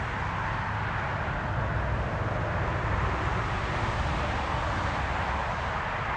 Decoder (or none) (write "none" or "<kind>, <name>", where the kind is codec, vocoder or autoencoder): none